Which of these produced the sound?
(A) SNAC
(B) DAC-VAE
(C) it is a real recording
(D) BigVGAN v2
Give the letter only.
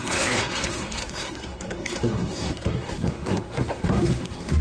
A